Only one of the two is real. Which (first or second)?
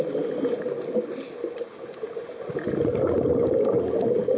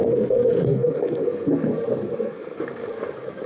first